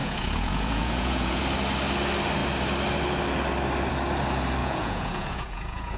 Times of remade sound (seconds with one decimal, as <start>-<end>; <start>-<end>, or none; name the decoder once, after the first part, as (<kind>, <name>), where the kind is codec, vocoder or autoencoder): 0.0-1.4 (vocoder, Vocos); 4.6-6.0